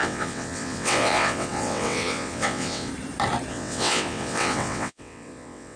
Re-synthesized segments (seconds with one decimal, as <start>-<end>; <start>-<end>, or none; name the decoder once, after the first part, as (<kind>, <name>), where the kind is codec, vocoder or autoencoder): 0.0-2.9 (vocoder, WaveNeXt); 3.5-5.8